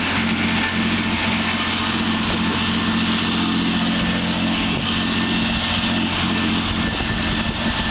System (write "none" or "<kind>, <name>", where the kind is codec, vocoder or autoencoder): none